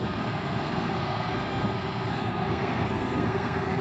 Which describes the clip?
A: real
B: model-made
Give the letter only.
B